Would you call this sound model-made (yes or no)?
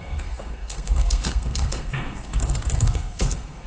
yes